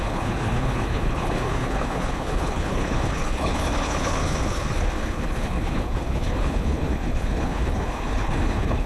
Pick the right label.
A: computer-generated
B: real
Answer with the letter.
A